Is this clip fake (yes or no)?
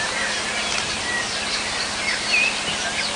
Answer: no